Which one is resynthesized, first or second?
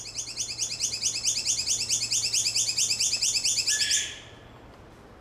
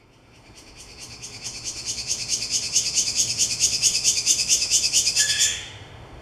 second